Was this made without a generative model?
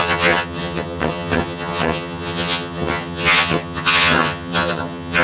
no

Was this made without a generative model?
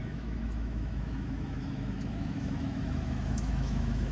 no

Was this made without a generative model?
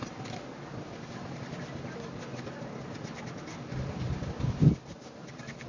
yes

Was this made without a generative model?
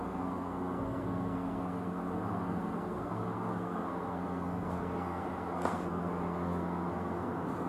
no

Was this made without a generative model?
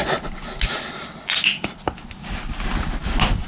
yes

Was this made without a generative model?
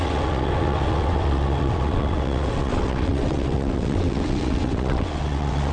no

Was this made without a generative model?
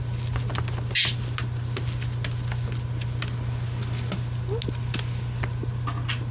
yes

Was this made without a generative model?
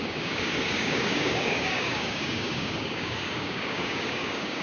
no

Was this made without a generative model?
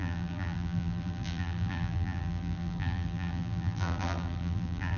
no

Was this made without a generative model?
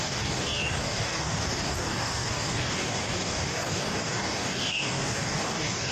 no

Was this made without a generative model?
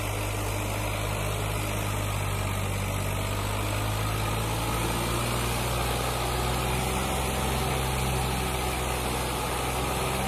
yes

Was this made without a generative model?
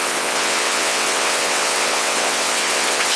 no